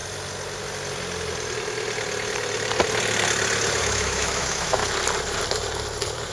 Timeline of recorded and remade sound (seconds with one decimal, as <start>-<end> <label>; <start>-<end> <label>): 0.0-3.8 recorded; 3.8-4.8 remade; 4.8-6.3 recorded